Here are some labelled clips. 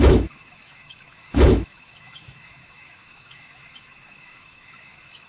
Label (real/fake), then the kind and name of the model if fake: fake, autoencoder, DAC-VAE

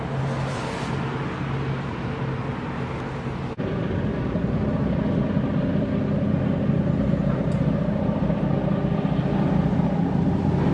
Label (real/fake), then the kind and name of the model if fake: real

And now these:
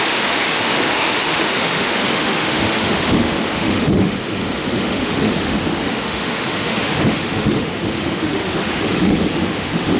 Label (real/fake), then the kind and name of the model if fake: fake, autoencoder, DAC-VAE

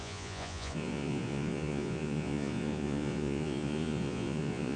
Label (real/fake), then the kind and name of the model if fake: fake, vocoder, Vocos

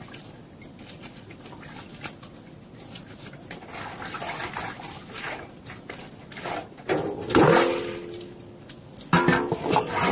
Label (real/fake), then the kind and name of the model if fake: real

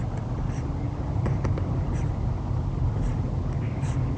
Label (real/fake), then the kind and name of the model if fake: real